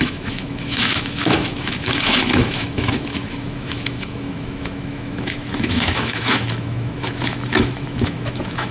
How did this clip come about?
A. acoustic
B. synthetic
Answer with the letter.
B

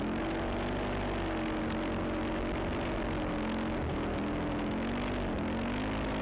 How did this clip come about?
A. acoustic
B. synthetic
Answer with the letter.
A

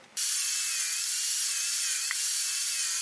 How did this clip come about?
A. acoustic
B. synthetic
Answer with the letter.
A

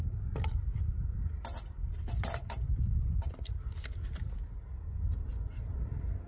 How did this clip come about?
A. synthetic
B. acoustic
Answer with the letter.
B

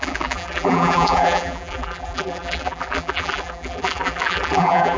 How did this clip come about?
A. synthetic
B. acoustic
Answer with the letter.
A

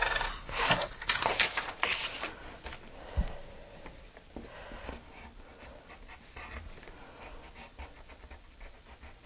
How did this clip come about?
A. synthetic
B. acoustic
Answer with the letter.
B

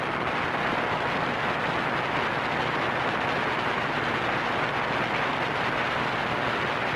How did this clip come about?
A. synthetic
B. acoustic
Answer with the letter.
B